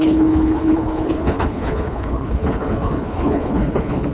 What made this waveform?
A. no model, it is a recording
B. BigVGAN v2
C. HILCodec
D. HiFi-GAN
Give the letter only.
C